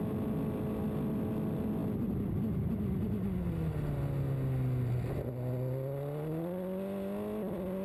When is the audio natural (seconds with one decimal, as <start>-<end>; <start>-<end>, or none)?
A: 0.0-7.8